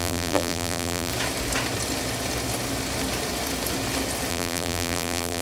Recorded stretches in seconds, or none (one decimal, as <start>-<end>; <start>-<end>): 1.1-4.3